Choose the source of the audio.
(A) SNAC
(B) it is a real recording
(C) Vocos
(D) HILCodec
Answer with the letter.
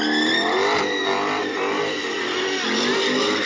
B